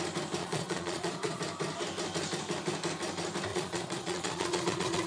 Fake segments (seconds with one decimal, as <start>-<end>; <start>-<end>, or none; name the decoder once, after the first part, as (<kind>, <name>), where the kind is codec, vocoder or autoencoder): 0.4-1.4 (vocoder, Vocos); 3.5-5.1